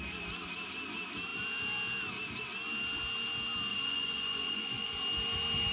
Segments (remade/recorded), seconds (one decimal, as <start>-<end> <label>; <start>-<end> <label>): 0.0-3.7 recorded; 3.7-4.9 remade; 4.9-5.7 recorded